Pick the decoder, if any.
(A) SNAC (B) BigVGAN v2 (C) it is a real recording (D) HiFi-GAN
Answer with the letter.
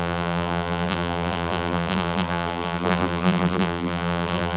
B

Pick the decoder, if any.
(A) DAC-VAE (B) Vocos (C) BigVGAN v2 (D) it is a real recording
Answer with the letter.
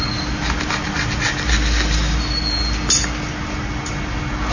D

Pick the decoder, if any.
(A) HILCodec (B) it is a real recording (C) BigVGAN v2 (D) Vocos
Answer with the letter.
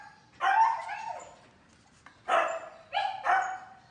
B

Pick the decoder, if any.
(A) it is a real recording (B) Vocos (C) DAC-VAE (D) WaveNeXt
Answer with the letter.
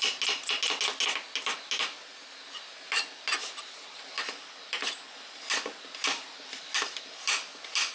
A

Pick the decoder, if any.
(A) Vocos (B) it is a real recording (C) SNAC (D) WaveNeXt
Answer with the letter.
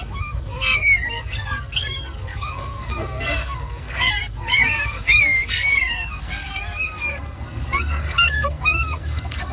C